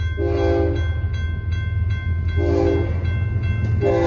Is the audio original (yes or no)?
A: yes